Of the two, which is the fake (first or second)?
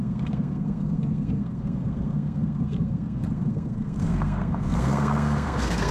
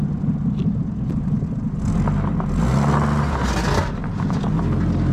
first